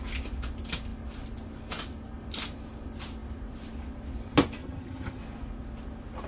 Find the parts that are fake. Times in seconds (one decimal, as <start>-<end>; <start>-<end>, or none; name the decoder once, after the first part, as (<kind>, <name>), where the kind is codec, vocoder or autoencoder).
4.6-5.2 (vocoder, HiFi-GAN)